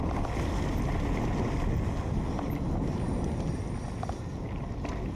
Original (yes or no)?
yes